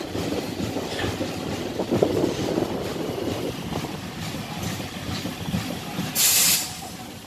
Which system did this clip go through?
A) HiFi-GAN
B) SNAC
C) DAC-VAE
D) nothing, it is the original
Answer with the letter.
D